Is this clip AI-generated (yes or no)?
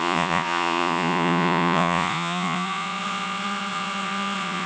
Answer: yes